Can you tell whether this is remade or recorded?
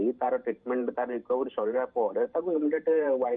remade